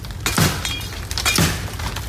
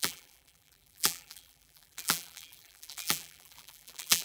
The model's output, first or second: second